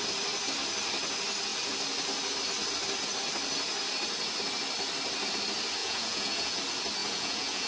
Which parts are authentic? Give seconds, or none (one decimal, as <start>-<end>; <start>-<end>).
0.0-5.8; 6.6-7.0